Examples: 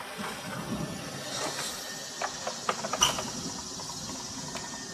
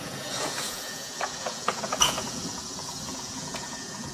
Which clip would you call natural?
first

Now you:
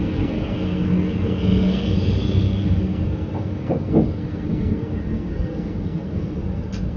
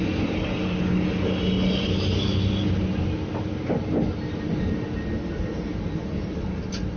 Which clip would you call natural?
second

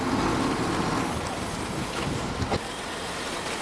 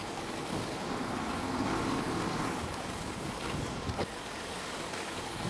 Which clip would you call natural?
first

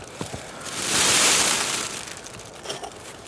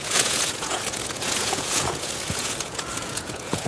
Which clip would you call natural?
first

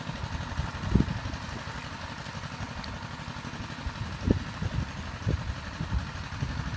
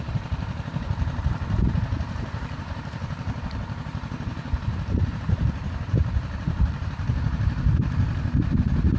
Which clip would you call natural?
first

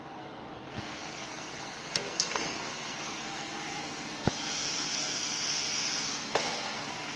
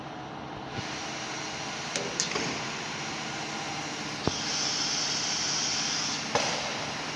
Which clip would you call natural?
second